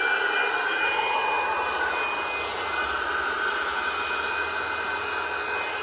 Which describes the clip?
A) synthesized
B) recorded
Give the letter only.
B